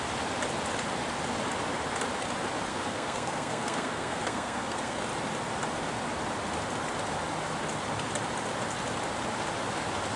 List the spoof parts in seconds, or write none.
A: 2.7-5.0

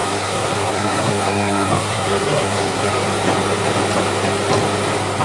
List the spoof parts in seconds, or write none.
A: 0.0-2.9

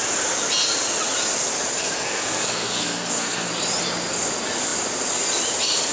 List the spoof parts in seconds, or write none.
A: 1.8-3.5

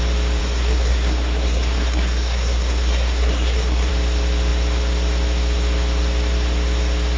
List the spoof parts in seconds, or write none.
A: 0.4-3.9

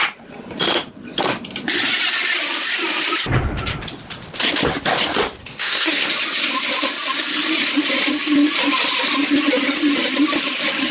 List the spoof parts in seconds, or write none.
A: 5.4-6.1

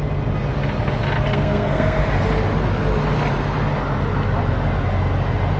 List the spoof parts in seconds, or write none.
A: 1.3-2.0

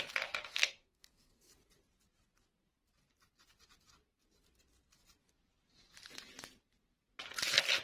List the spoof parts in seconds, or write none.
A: 0.5-1.5